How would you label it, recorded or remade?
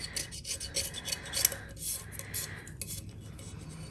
recorded